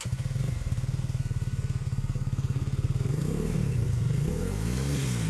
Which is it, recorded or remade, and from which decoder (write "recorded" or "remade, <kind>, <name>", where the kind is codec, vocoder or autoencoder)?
remade, codec, SNAC